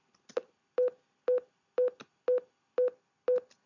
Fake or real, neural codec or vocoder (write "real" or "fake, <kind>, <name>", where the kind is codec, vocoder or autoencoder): real